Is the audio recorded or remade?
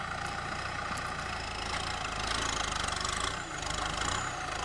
recorded